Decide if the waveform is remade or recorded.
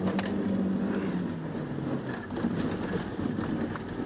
recorded